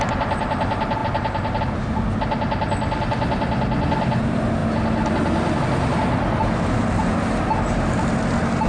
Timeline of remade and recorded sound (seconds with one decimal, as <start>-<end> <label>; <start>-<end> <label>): 0.0-8.7 recorded